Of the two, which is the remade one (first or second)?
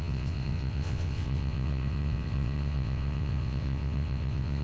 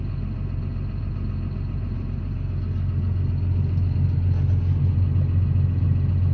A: first